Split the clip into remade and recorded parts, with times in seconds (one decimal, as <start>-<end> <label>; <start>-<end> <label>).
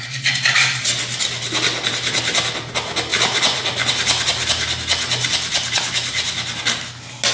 0.0-7.3 recorded